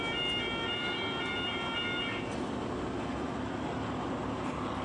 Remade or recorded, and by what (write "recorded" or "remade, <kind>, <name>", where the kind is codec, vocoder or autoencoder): recorded